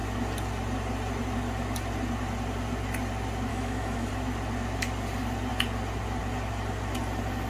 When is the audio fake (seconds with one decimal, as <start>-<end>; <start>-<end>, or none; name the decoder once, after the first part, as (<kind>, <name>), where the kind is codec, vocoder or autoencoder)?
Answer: 3.5-4.1 (autoencoder, DAC-VAE)